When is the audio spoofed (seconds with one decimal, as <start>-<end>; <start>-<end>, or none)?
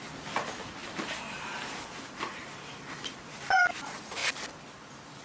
0.8-1.8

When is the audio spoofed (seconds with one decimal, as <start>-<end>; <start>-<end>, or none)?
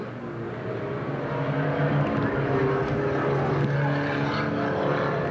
none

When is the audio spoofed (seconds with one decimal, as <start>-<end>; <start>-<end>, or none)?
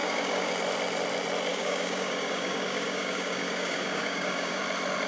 0.0-0.5; 1.5-4.6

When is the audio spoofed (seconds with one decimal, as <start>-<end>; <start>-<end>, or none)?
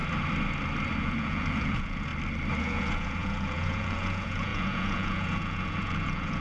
1.0-2.1; 2.6-6.4